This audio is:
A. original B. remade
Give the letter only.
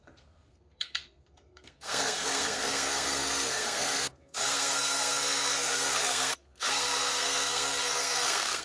B